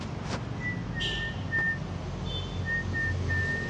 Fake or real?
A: real